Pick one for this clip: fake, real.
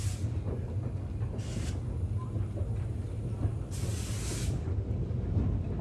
real